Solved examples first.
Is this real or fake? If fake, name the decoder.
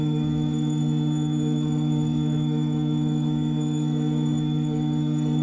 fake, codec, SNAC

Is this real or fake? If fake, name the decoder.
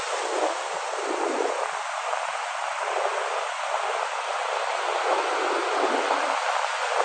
real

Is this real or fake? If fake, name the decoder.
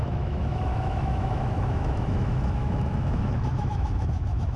fake, autoencoder, DAC-VAE